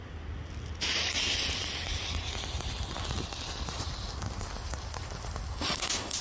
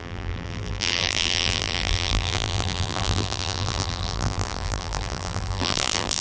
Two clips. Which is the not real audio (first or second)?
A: second